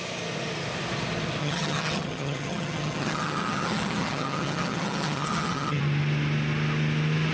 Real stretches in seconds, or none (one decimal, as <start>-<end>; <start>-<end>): 0.0-1.4; 5.8-7.3